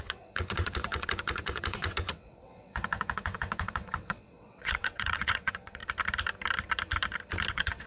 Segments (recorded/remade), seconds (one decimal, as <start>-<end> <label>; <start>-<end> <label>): 0.0-5.8 remade; 5.8-7.5 recorded; 7.5-7.9 remade